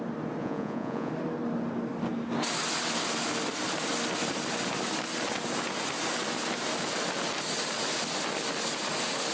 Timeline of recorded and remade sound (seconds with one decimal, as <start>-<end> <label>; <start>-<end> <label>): 0.0-0.4 recorded; 0.4-1.1 remade; 1.1-9.3 recorded